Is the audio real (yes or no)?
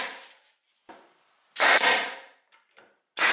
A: yes